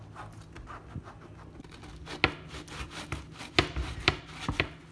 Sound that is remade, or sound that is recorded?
recorded